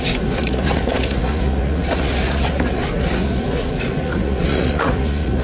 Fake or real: fake